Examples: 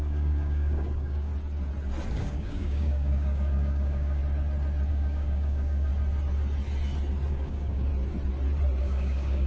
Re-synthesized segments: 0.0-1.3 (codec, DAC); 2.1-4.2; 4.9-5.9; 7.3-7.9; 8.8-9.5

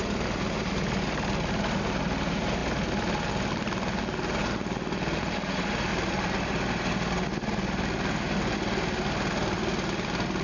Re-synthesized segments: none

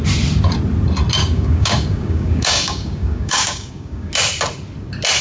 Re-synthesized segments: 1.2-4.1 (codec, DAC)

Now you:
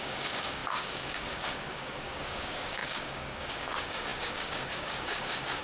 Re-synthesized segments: 0.0-5.6 (codec, DAC)

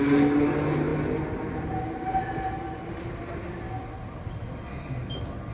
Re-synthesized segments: none